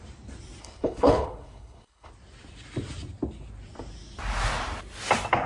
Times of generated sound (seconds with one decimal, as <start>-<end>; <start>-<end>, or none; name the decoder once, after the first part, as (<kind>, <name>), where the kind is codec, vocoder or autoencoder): 0.6-2.1 (codec, HILCodec)